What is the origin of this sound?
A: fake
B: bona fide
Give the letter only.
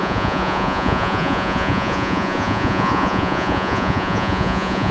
A